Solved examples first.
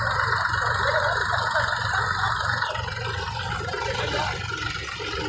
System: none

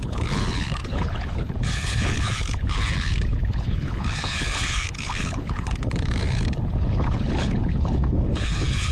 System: codec, HILCodec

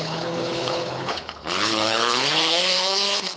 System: codec, HILCodec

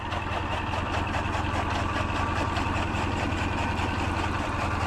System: none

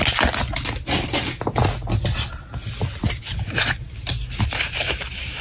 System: none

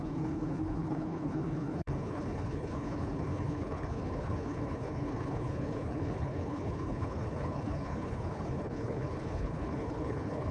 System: codec, HILCodec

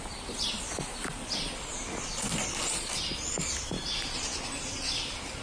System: none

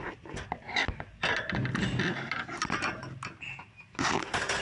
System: none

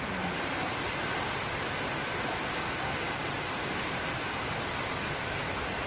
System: none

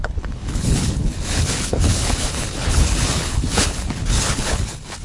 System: codec, HILCodec